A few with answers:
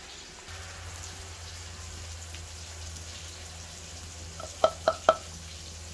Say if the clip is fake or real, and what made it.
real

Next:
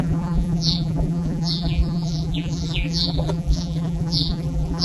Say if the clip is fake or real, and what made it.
fake, vocoder, BigVGAN v2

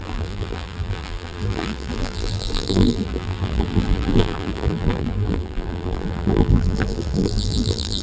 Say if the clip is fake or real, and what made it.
fake, vocoder, BigVGAN v2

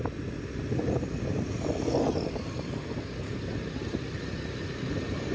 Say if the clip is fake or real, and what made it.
fake, vocoder, BigVGAN v2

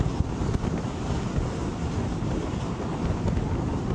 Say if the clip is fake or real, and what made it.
real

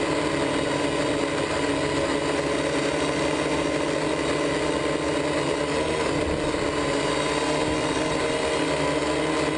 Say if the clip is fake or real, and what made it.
real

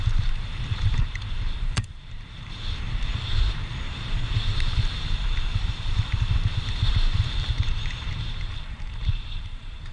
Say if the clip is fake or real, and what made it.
fake, vocoder, BigVGAN v2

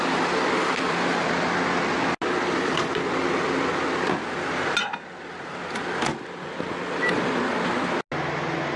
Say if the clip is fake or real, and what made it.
real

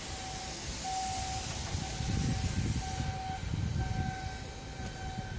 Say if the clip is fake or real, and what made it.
real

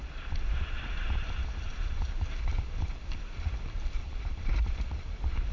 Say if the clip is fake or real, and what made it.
fake, vocoder, BigVGAN v2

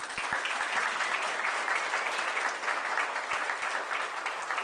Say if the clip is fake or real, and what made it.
real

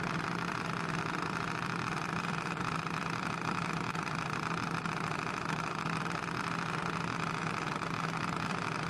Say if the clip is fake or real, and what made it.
fake, vocoder, BigVGAN v2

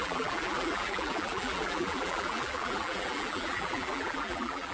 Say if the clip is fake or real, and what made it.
fake, vocoder, BigVGAN v2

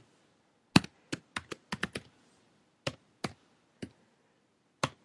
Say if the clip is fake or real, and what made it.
real